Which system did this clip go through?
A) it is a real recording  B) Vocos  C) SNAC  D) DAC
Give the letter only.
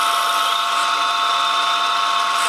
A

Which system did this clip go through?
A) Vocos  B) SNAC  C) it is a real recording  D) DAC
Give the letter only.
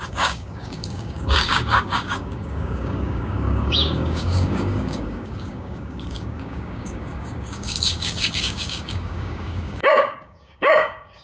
D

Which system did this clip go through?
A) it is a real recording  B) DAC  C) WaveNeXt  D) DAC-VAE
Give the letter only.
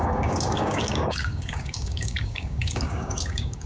B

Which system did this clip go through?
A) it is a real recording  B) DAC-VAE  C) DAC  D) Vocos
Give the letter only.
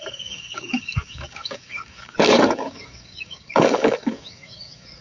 C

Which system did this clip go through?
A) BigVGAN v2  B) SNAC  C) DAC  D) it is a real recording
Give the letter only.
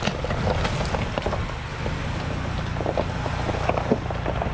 D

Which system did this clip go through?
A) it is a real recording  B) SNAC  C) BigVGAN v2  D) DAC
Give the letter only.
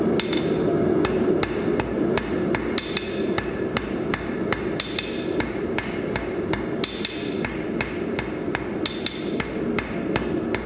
A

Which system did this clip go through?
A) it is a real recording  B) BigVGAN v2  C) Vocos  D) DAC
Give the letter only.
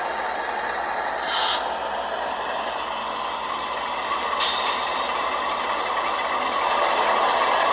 A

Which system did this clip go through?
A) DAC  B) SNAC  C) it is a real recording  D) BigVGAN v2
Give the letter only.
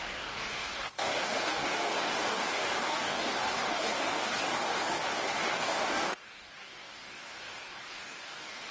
A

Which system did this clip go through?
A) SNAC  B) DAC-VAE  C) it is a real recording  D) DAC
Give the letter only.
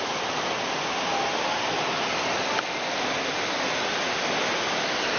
C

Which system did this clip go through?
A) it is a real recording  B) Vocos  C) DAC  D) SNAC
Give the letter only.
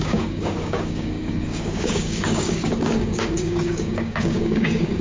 C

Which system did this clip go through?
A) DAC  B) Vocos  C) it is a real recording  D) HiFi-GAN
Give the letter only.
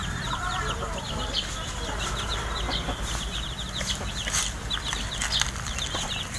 C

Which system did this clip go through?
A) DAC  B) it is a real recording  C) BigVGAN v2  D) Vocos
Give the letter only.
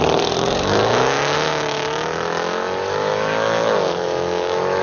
A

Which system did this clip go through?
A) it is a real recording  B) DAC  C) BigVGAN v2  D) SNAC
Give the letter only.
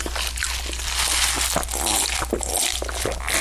A